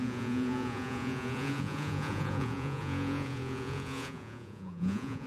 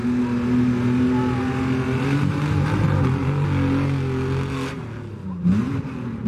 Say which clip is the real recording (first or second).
second